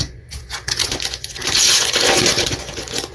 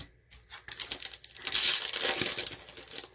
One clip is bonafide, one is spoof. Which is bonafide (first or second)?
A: second